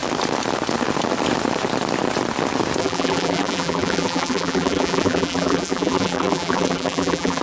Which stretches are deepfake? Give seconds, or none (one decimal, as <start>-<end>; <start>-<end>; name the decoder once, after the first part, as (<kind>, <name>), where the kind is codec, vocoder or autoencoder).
2.8-7.4 (vocoder, BigVGAN v2)